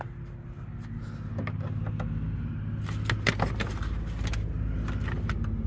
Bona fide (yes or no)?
yes